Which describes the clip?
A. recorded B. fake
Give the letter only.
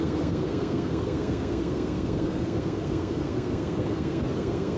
B